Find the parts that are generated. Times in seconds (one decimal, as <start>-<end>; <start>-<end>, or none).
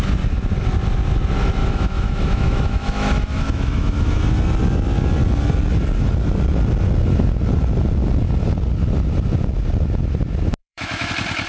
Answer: 1.6-4.2; 10.6-11.1